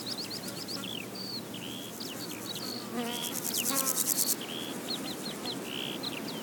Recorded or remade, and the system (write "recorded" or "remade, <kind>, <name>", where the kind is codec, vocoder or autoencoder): recorded